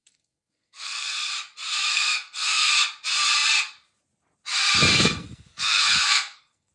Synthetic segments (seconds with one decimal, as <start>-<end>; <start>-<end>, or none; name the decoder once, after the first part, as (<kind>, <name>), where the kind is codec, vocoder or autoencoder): 0.0-1.3 (codec, SNAC); 1.9-2.7; 4.9-6.7